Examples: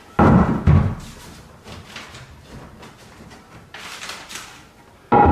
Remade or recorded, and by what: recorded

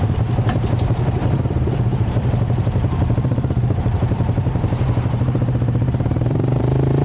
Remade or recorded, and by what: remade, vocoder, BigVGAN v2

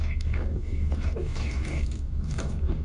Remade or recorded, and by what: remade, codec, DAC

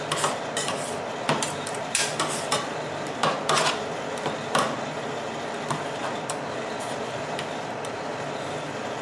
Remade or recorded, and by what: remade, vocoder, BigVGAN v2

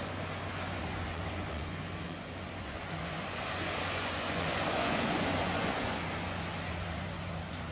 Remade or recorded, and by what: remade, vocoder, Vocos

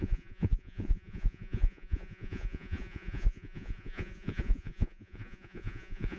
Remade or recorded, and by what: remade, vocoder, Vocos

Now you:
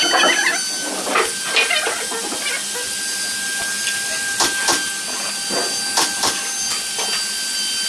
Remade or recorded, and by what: recorded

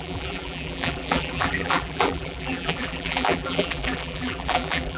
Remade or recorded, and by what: remade, vocoder, BigVGAN v2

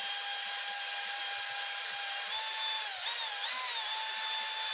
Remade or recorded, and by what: recorded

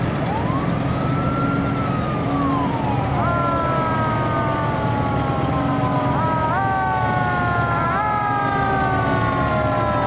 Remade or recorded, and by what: recorded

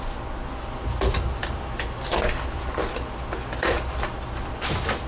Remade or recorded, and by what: recorded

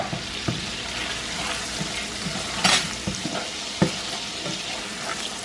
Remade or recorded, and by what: recorded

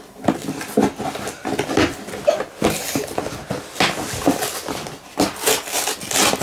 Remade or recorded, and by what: recorded